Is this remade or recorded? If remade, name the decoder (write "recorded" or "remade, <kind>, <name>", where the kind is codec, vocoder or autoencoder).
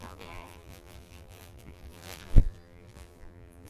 remade, vocoder, BigVGAN v2